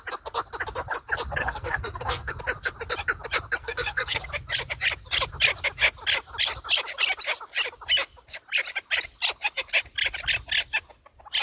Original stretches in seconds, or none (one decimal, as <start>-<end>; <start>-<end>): 0.0-1.4; 2.4-3.6; 4.3-11.4